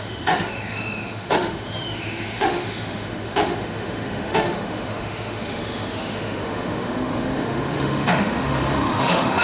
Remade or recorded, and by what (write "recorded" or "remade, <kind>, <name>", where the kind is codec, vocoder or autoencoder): remade, autoencoder, DAC-VAE